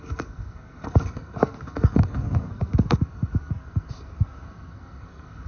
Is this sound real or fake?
fake